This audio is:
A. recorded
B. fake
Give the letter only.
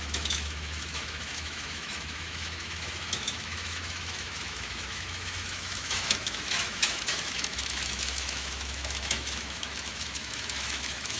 B